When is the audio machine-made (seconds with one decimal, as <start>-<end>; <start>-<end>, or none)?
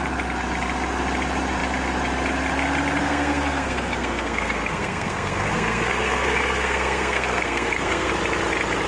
3.0-8.1